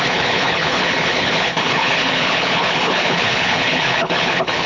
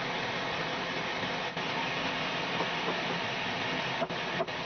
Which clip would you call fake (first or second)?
first